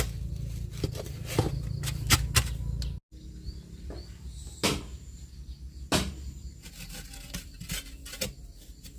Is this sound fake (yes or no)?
no